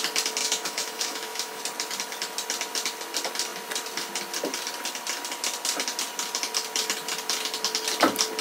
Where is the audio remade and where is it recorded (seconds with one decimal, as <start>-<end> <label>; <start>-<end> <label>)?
0.0-0.4 recorded; 0.4-1.6 remade; 1.6-8.4 recorded